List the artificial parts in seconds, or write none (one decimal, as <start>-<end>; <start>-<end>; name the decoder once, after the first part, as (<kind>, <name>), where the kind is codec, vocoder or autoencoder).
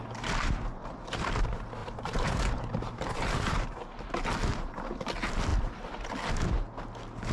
1.8-3.7 (vocoder, BigVGAN v2)